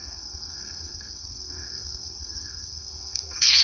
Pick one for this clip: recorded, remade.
remade